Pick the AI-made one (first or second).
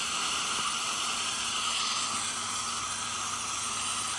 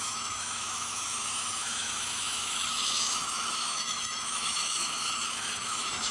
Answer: second